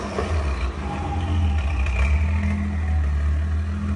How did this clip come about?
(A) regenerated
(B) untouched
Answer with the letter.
B